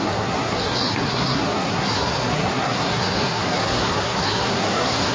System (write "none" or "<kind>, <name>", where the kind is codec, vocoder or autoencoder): codec, SNAC